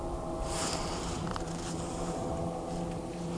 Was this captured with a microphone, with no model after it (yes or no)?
no